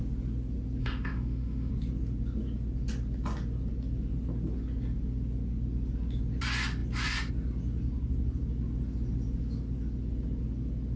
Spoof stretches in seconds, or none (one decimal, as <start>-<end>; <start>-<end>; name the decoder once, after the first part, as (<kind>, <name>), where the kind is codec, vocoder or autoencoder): 0.8-1.7 (autoencoder, DAC-VAE)

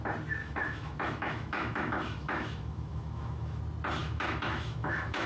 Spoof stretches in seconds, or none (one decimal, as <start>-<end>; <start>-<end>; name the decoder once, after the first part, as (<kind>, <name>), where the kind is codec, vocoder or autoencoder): 0.4-3.6 (autoencoder, DAC-VAE); 4.0-5.3

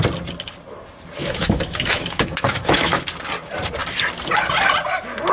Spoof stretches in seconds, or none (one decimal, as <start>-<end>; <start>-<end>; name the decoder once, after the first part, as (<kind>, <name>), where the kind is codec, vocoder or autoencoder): 1.2-3.1 (autoencoder, DAC-VAE)

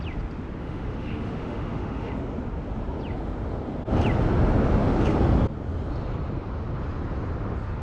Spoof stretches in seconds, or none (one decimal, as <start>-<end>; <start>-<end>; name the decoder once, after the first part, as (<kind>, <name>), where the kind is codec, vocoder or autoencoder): 0.6-2.1 (autoencoder, DAC-VAE)